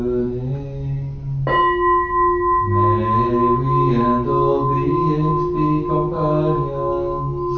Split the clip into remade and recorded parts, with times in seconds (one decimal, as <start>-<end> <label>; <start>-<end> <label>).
0.0-7.6 recorded